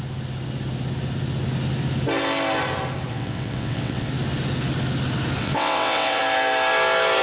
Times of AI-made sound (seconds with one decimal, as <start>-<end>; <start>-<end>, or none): 3.1-4.1; 5.4-6.2